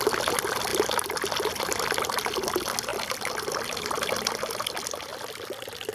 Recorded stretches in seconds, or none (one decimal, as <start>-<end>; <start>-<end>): 0.0-2.9; 4.3-5.1